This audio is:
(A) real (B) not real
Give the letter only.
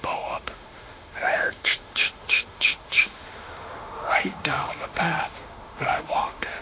B